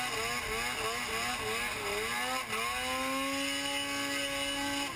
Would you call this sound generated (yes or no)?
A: no